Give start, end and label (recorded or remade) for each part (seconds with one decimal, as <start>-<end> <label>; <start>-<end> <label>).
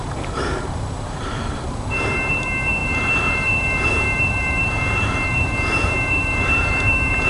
0.0-7.3 remade